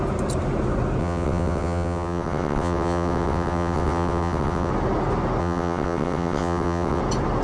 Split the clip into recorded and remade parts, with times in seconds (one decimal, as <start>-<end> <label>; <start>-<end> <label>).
0.0-1.0 recorded; 1.0-4.7 remade; 4.7-5.4 recorded; 5.4-7.0 remade; 7.0-7.4 recorded